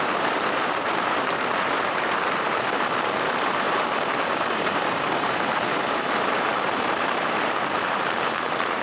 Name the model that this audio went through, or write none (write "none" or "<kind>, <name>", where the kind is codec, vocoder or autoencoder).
vocoder, BigVGAN v2